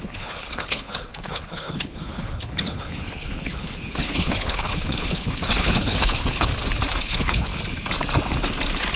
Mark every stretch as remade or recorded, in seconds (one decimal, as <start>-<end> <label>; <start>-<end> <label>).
0.0-6.5 remade; 6.5-7.0 recorded; 7.0-7.5 remade; 7.5-9.0 recorded